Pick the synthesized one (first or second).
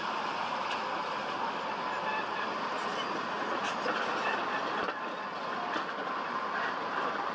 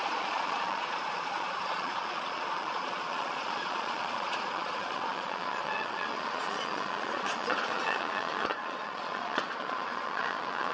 second